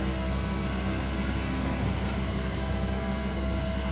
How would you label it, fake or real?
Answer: fake